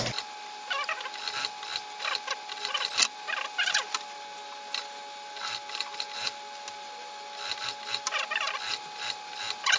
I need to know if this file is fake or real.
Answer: real